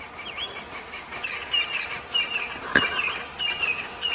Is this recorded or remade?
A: recorded